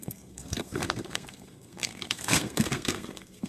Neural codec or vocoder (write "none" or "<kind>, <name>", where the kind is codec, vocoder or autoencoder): codec, SNAC